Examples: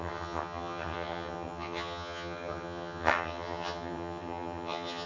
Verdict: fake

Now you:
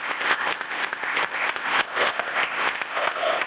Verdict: fake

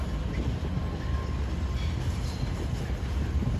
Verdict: real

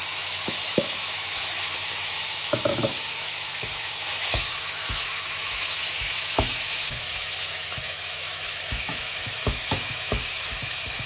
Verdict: fake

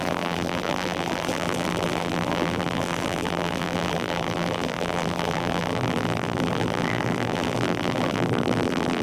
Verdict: fake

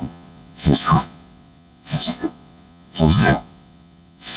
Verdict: fake